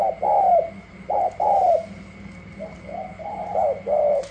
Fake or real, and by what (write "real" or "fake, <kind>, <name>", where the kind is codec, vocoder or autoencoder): real